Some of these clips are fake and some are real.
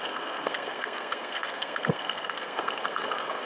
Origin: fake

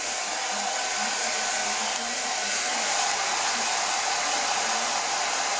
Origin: real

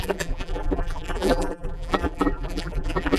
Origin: fake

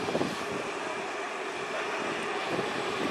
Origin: real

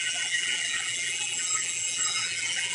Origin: fake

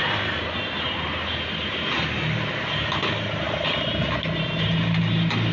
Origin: real